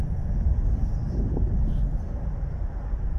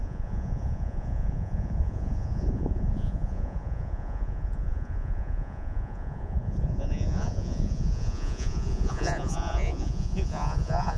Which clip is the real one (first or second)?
first